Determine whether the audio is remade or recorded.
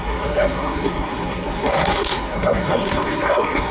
remade